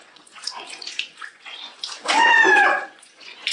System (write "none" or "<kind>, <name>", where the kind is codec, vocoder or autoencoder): vocoder, Vocos